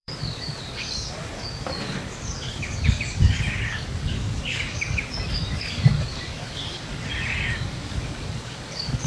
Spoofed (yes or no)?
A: yes